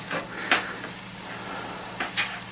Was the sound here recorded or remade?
recorded